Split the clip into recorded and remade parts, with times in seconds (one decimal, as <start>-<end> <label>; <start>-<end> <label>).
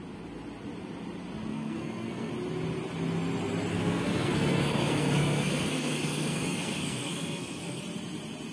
0.0-1.5 recorded; 1.5-2.3 remade; 2.3-3.7 recorded; 3.7-7.8 remade; 7.8-8.5 recorded